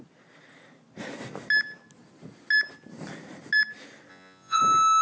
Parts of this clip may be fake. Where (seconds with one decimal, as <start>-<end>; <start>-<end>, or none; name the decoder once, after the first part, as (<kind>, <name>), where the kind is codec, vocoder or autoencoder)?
4.1-4.6 (vocoder, Vocos)